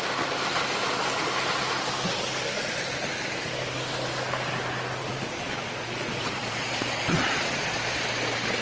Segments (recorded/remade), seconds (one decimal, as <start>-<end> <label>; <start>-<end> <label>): 0.0-5.0 recorded; 5.0-7.8 remade; 7.8-8.6 recorded